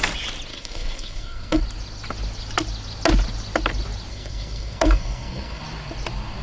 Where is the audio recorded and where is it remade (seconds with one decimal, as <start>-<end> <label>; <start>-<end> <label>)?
0.0-0.5 recorded; 0.5-1.6 remade; 1.6-4.1 recorded; 4.1-5.6 remade; 5.6-6.4 recorded